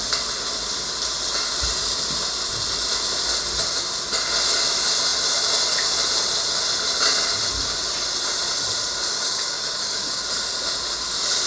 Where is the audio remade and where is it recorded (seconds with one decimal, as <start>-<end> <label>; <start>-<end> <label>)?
0.0-9.1 recorded; 9.1-10.2 remade; 10.2-11.5 recorded